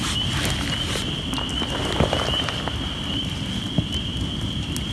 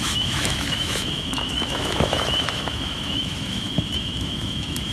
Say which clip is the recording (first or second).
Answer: first